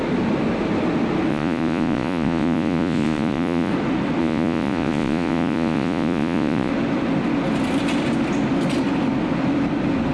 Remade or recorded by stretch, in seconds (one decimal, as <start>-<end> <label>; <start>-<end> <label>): 0.0-1.3 recorded; 1.3-3.7 remade; 3.7-4.2 recorded; 4.2-6.7 remade; 6.7-10.1 recorded